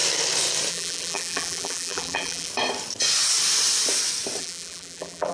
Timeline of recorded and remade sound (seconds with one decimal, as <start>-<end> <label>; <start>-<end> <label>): 0.0-0.7 recorded; 0.7-2.5 remade; 2.5-4.4 recorded; 4.4-5.3 remade